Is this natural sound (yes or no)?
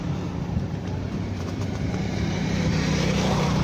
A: no